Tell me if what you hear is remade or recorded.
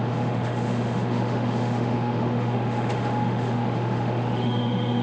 remade